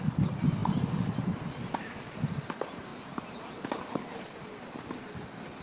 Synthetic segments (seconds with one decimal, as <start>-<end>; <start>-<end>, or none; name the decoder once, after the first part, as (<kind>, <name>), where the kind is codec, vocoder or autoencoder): none